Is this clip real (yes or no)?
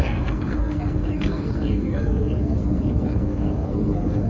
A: no